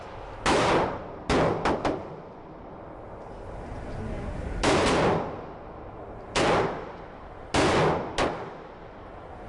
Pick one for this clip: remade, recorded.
recorded